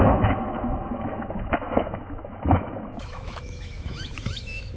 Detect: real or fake fake